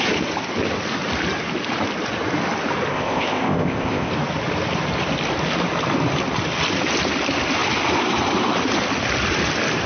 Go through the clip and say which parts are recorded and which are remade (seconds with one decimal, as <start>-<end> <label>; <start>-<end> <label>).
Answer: 0.0-2.9 recorded; 2.9-4.1 remade; 4.1-9.9 recorded